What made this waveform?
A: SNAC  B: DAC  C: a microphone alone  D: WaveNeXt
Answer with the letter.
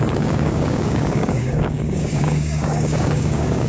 B